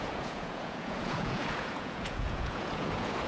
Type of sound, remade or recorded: remade